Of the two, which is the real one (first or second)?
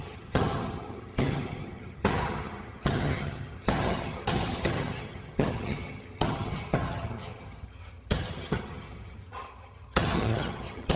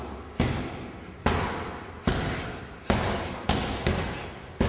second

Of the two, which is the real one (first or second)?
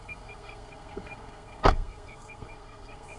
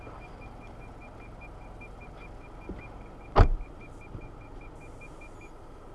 second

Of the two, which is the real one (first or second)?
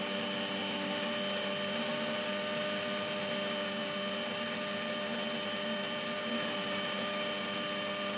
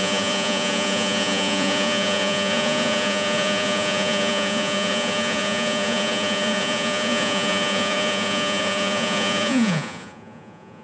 first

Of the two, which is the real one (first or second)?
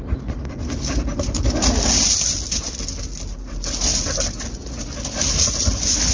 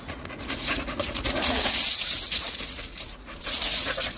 first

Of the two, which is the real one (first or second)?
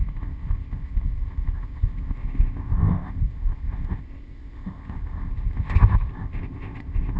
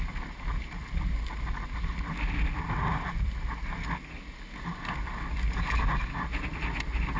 second